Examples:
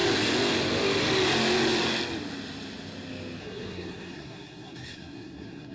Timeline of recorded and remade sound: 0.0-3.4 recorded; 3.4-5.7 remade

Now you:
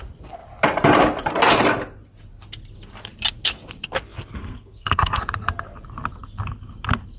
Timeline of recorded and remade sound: 0.0-4.4 recorded; 4.4-5.2 remade; 5.2-7.2 recorded

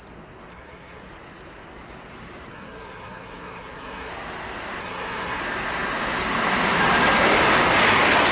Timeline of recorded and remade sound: 0.0-0.5 recorded; 0.5-1.0 remade; 1.0-2.5 recorded; 2.5-4.1 remade; 4.1-4.8 recorded; 4.8-5.4 remade; 5.4-8.3 recorded